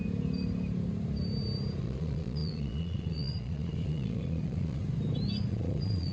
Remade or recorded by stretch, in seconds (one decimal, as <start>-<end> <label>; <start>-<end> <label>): 0.0-1.8 recorded; 1.8-4.8 remade; 4.8-5.5 recorded; 5.5-6.1 remade

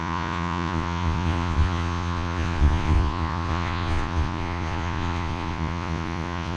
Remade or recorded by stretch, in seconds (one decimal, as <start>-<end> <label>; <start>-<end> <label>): 0.0-6.6 remade

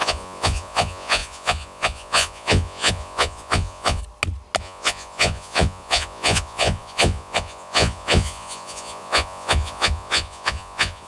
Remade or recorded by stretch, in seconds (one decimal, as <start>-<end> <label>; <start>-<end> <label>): 0.0-4.0 remade; 4.0-4.6 recorded; 4.6-11.1 remade

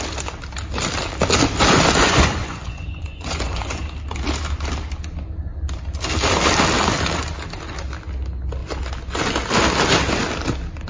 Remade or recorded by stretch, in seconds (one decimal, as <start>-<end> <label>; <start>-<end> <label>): 0.0-2.0 recorded; 2.0-3.8 remade; 3.8-10.9 recorded